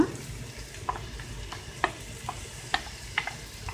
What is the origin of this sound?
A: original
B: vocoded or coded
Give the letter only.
A